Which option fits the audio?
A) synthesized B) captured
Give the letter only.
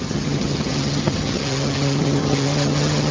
A